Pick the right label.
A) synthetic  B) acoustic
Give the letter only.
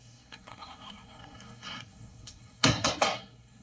A